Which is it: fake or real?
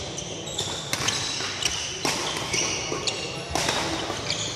real